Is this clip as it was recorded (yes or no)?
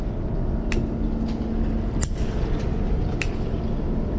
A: yes